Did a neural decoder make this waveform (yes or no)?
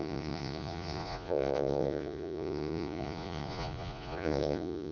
yes